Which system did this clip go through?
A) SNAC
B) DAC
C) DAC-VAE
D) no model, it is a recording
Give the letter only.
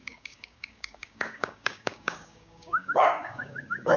B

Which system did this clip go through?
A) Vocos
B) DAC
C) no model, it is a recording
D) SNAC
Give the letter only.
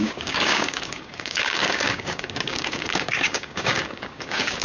B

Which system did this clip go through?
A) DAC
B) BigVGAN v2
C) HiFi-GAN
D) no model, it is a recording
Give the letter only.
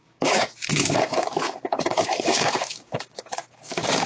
A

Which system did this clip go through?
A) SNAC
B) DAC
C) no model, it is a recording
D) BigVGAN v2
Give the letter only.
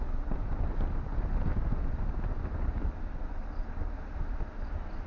C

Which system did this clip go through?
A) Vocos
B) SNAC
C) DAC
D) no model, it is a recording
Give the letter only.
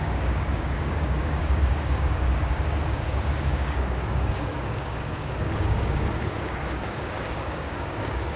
C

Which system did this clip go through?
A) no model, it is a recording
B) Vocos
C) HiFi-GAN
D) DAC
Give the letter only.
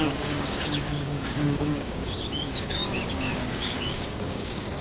D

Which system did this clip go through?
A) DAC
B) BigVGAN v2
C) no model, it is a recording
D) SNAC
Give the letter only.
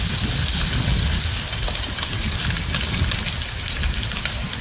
C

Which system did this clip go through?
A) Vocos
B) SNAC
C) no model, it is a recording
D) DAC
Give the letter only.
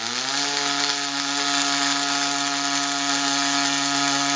C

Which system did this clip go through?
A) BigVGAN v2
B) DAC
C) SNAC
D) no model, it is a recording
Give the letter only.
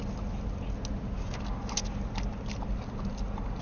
D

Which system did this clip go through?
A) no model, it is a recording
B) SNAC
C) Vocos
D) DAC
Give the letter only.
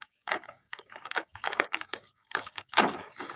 D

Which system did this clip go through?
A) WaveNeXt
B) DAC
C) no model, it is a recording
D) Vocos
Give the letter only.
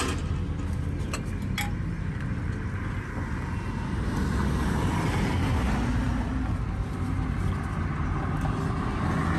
C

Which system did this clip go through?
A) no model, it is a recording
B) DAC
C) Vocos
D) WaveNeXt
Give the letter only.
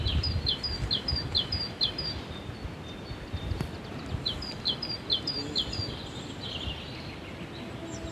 A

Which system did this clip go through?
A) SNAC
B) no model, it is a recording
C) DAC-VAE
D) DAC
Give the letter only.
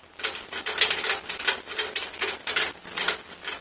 B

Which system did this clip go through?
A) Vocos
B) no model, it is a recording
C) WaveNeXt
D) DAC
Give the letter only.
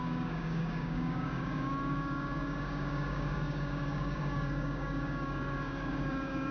D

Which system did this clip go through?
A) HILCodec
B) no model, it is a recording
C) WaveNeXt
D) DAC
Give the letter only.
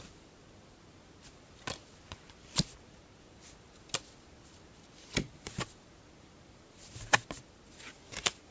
B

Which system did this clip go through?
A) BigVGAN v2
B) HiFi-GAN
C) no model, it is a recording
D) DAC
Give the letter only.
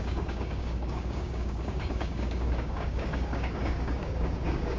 D